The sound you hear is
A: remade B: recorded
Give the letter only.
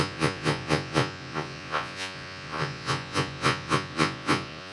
A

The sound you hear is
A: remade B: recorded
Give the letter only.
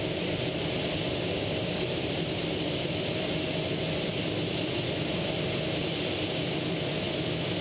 B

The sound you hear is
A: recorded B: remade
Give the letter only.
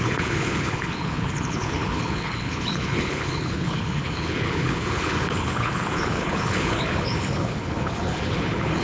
B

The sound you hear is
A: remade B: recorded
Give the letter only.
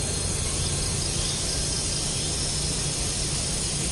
B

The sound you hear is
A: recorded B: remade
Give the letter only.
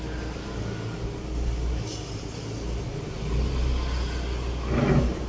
A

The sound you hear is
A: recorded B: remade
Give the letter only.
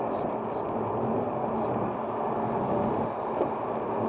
A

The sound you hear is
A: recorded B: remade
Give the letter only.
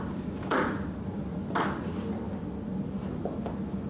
A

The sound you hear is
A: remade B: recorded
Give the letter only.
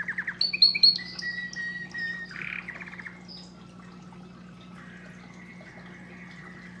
B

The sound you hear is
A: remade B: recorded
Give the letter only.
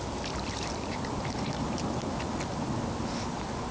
B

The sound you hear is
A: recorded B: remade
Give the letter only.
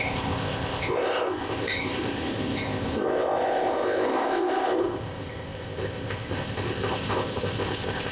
B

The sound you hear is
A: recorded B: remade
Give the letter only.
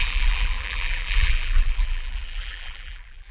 B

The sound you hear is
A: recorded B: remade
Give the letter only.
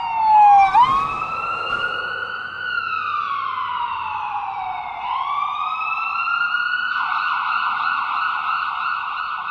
A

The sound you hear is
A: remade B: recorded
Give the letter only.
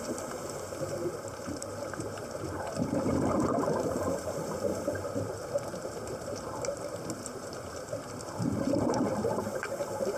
A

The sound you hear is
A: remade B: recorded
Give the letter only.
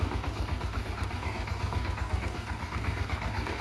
A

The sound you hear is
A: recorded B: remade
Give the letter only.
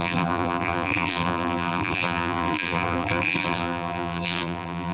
B